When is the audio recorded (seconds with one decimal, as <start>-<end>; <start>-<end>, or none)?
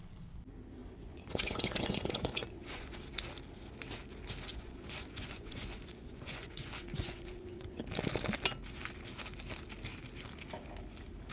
0.0-0.8; 3.0-4.5; 7.8-11.3